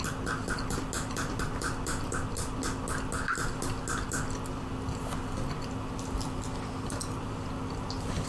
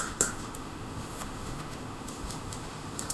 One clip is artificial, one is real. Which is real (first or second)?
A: first